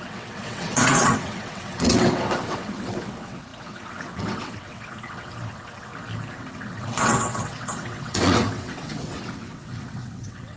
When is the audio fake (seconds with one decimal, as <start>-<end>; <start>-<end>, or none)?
0.0-5.9; 6.4-10.6